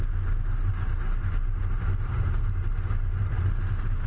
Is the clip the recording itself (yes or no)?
yes